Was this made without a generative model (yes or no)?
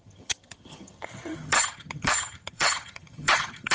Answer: no